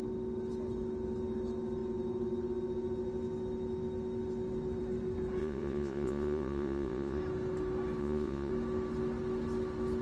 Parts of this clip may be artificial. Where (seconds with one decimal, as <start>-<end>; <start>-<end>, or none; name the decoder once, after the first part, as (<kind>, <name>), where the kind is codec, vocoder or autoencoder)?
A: 5.4-7.2 (vocoder, Vocos); 8.0-8.5